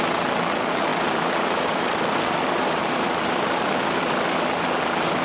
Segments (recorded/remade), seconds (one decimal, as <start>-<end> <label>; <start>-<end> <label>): 0.0-0.9 recorded; 0.9-4.0 remade; 4.0-5.2 recorded